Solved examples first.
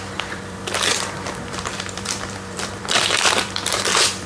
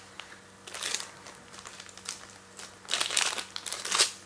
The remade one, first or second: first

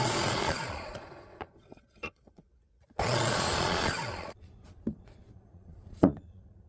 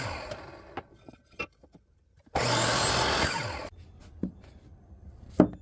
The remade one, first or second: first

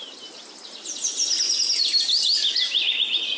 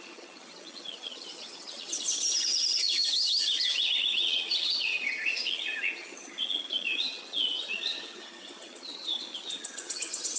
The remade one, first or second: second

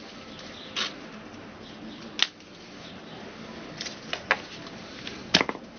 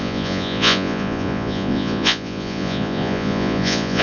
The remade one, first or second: second